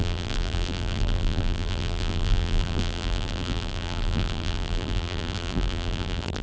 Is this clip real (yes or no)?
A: no